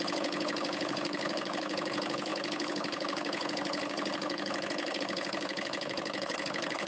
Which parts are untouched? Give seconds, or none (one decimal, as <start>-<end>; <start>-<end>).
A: none